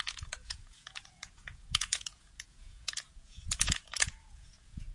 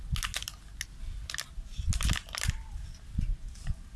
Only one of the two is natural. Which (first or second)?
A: second